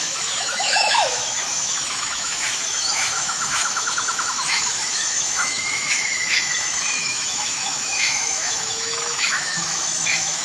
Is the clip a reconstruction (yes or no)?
yes